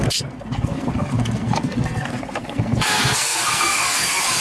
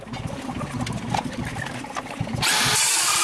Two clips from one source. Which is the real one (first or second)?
second